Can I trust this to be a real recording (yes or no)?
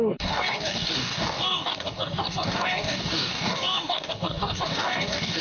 no